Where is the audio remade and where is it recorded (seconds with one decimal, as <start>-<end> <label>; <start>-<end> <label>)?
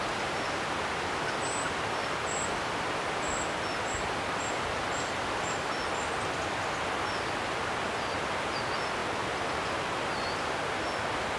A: 0.0-11.4 recorded